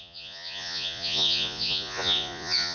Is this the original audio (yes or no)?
no